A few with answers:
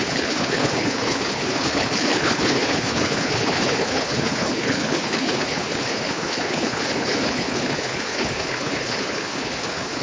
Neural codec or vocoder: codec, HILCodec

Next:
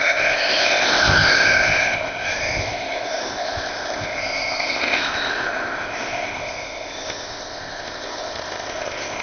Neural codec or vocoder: codec, ZipCodec